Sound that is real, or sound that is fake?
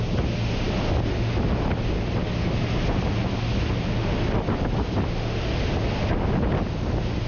real